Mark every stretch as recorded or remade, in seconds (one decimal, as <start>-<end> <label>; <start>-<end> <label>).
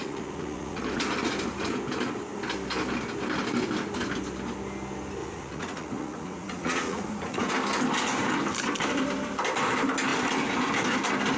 0.0-0.8 remade; 0.8-5.2 recorded; 5.2-7.5 remade; 7.5-11.4 recorded